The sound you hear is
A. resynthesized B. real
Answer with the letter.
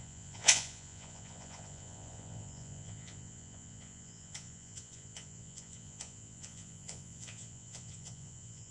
A